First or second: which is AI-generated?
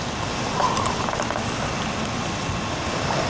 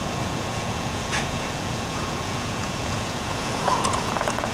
second